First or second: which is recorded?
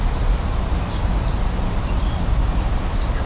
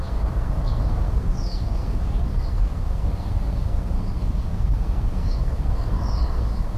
first